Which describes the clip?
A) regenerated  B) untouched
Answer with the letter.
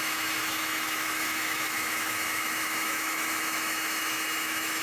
A